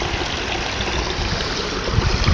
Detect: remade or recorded recorded